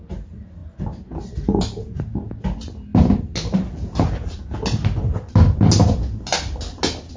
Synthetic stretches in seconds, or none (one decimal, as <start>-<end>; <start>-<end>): none